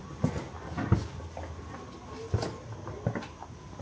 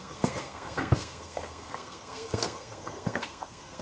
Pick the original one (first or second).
first